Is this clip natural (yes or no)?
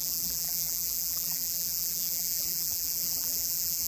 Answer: no